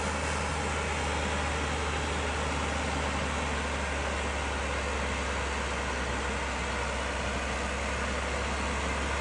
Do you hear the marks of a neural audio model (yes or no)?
no